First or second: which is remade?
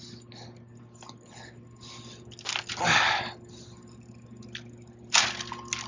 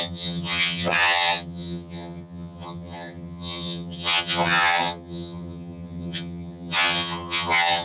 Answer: second